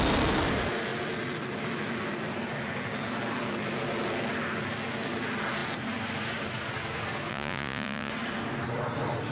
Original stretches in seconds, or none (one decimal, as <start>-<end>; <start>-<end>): 0.0-7.3; 8.1-9.3